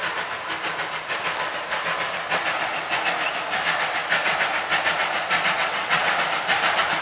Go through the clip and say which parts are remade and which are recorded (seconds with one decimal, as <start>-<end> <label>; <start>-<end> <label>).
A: 0.0-5.6 recorded; 5.6-6.1 remade; 6.1-7.0 recorded